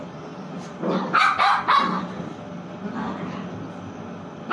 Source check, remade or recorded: recorded